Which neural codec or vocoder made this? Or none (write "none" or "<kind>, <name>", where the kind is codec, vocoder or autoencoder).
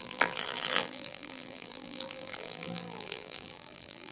vocoder, BigVGAN v2